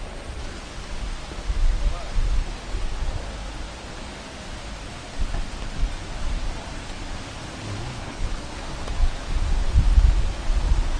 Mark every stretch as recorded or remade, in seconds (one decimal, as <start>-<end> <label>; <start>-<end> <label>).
0.0-7.9 recorded; 7.9-8.5 remade; 8.5-11.0 recorded